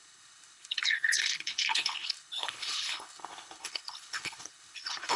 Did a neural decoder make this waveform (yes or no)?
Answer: yes